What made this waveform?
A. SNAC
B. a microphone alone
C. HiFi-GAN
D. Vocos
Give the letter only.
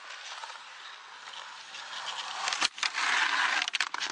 B